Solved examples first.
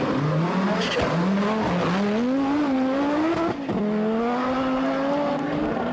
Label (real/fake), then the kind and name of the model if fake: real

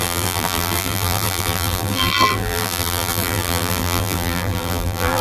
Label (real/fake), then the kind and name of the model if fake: fake, vocoder, BigVGAN v2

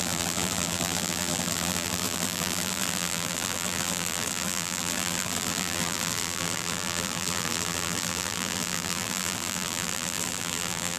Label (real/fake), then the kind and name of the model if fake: fake, vocoder, BigVGAN v2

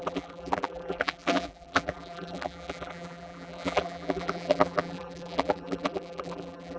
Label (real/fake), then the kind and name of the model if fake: fake, vocoder, BigVGAN v2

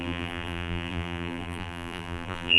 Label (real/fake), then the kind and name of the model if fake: fake, vocoder, BigVGAN v2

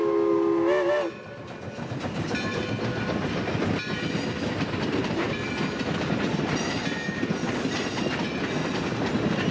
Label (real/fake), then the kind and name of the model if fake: real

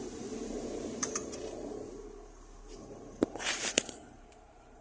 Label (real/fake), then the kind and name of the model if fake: fake, vocoder, BigVGAN v2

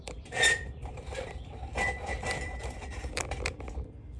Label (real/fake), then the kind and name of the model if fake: fake, vocoder, BigVGAN v2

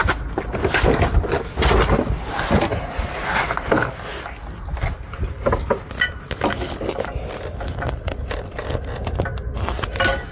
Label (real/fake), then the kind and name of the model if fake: real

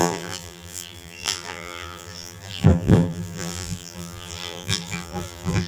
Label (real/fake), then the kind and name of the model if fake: fake, vocoder, BigVGAN v2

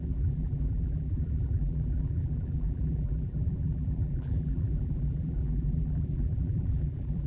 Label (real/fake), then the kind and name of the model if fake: fake, vocoder, BigVGAN v2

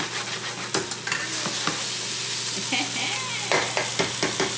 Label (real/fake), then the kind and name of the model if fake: real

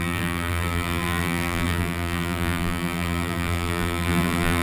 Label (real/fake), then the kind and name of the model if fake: fake, vocoder, BigVGAN v2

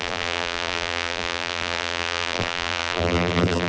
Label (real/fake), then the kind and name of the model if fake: fake, vocoder, BigVGAN v2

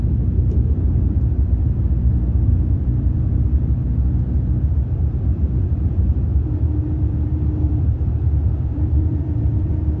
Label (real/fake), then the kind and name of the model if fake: fake, vocoder, BigVGAN v2